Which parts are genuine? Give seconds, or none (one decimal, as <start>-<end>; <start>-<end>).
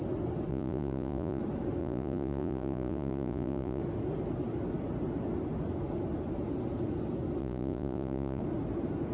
0.0-0.5; 1.4-1.8; 3.8-7.4; 8.4-9.1